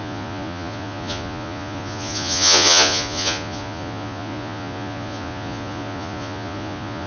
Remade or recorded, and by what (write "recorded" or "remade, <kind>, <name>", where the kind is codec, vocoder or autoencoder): remade, vocoder, Vocos